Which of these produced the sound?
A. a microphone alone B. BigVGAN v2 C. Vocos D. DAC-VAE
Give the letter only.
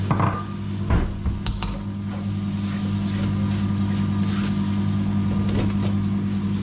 A